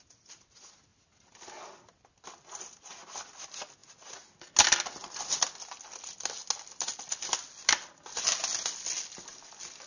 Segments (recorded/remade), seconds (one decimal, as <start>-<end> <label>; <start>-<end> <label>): 0.0-9.9 recorded